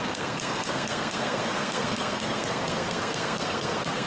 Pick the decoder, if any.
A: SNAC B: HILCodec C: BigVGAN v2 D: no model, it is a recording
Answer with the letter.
A